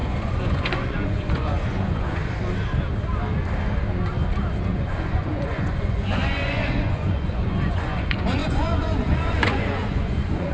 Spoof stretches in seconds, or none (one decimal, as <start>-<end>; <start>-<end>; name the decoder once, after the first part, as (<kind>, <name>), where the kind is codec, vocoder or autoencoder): 0.0-2.2 (vocoder, Vocos); 4.8-10.5